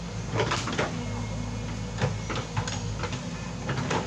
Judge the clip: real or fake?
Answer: real